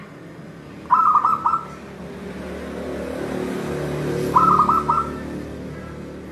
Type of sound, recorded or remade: recorded